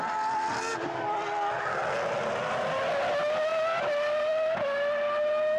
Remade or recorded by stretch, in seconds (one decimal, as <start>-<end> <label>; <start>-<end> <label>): 0.0-5.6 recorded